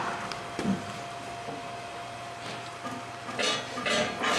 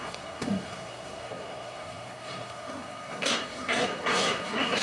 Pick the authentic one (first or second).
first